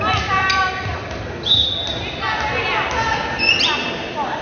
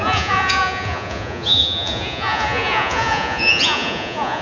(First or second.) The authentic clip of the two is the first